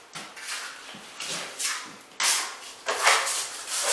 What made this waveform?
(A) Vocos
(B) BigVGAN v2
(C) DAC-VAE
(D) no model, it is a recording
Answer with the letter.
D